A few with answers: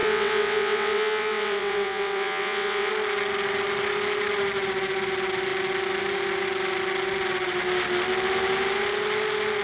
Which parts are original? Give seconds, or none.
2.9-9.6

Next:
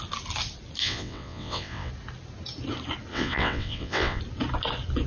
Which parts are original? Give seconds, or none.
0.0-0.8; 1.9-3.1; 4.2-5.1